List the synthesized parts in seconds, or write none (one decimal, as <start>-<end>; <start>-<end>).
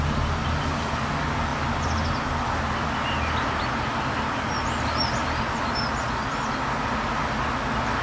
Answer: none